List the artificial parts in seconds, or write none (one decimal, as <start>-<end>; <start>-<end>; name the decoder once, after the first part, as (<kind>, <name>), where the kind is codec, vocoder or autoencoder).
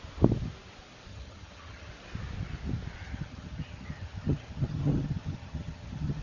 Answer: 1.1-1.9 (vocoder, HiFi-GAN); 3.0-6.2